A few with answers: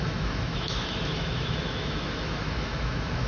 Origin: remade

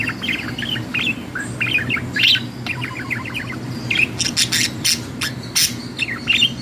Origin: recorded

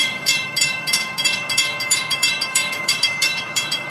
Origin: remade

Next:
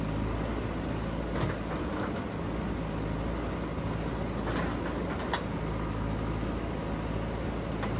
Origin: recorded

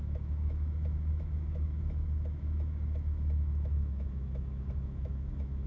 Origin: remade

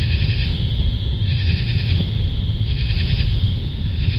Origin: remade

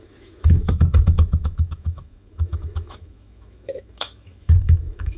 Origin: remade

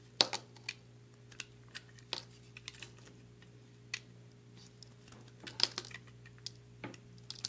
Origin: recorded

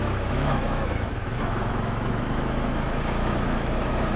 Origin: remade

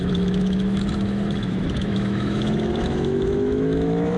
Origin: remade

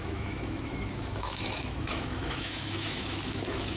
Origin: remade